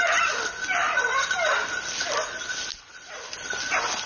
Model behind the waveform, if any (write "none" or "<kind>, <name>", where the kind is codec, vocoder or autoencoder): none